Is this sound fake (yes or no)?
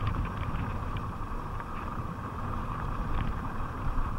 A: yes